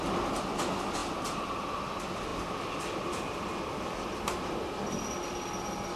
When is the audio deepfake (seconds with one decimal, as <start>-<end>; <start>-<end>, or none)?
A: 2.3-4.7